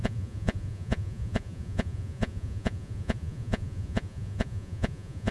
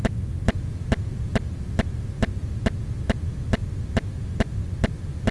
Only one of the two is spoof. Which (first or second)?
first